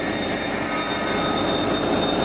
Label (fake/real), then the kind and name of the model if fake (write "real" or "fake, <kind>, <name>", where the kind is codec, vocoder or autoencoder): real